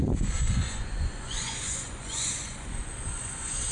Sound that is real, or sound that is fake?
fake